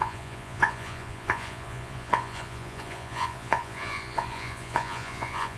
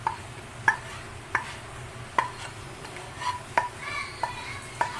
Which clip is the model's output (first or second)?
first